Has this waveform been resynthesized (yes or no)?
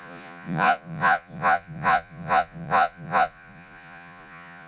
yes